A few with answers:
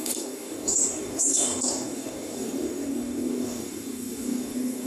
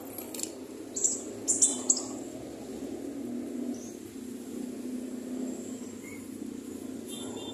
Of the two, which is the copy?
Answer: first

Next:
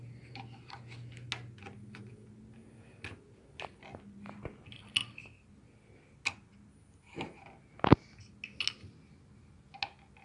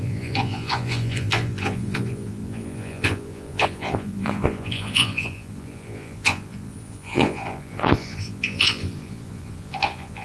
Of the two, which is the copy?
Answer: second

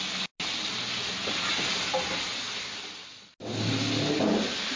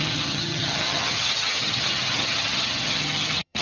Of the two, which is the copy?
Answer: second